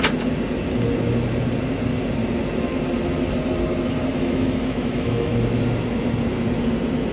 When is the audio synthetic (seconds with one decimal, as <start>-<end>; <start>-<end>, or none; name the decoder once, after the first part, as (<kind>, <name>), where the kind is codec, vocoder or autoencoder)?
4.1-5.3 (autoencoder, DAC-VAE)